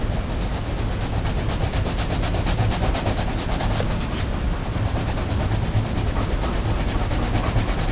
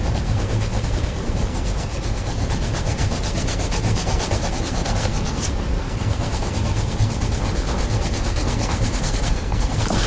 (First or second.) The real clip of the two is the first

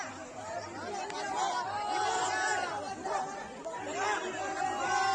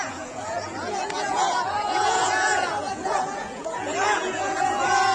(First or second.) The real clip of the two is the first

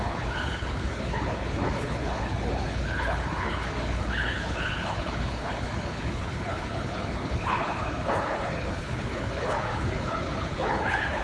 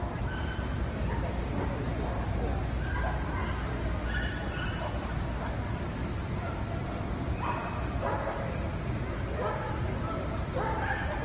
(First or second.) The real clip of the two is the second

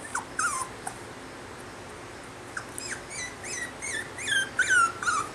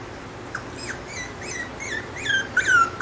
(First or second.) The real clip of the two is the first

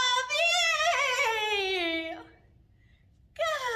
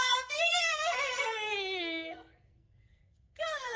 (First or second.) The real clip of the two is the first